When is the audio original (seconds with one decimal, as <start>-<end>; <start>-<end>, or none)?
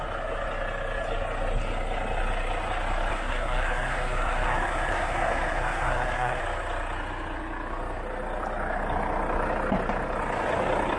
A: 0.0-3.1; 6.4-11.0